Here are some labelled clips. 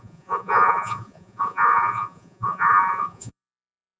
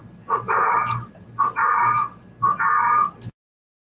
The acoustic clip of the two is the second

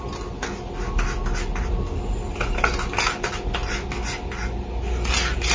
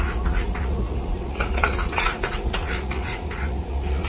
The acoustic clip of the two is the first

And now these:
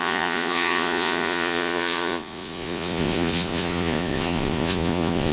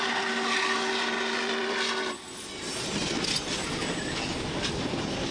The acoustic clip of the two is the second